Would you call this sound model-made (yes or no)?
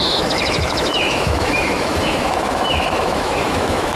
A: yes